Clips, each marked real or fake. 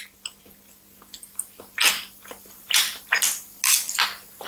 real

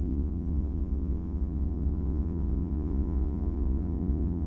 fake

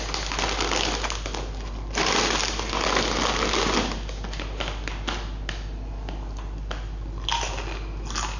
real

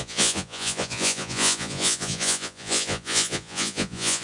fake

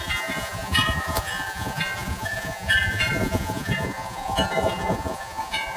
fake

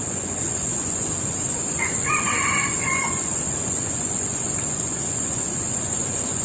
fake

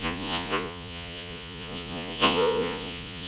fake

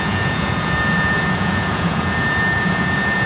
fake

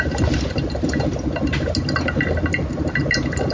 real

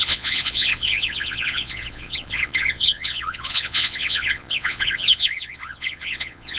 fake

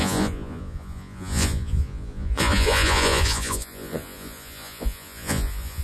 fake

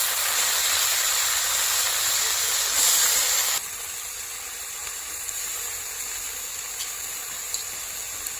real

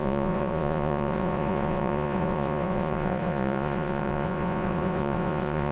fake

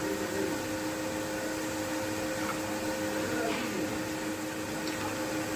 real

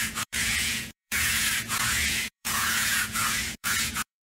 fake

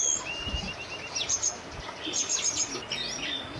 real